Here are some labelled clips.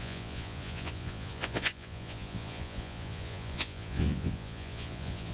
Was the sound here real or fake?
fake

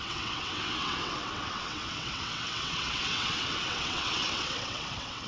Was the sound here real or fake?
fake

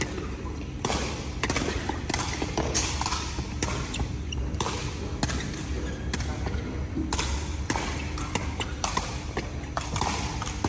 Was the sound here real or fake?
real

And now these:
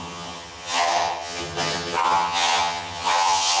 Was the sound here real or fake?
fake